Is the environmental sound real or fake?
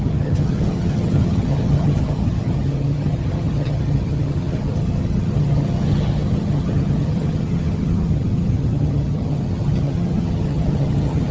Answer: fake